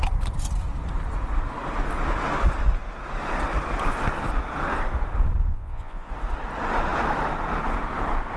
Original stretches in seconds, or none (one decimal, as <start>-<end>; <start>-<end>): 0.0-5.5; 6.1-8.4